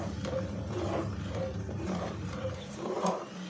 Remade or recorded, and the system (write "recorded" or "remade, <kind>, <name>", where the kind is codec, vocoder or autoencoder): remade, vocoder, BigVGAN v2